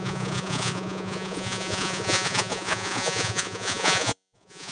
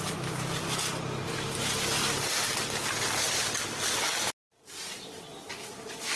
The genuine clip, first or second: second